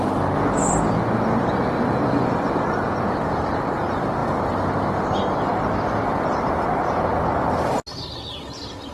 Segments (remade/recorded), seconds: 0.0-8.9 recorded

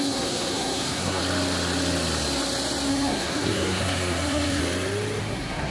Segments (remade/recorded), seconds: 0.0-1.2 remade; 1.2-2.9 recorded; 2.9-4.6 remade; 4.6-5.2 recorded; 5.2-5.7 remade

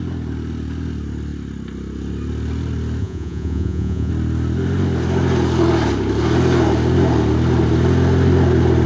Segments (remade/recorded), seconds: 0.0-3.0 recorded; 3.0-4.1 remade; 4.1-8.9 recorded